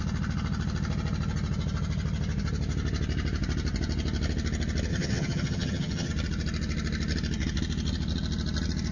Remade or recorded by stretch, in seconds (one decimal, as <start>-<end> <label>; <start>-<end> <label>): 0.0-4.9 recorded; 4.9-6.1 remade; 6.1-8.9 recorded